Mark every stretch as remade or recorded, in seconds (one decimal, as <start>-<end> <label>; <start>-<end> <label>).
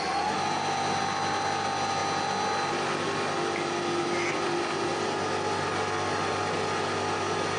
0.0-7.6 recorded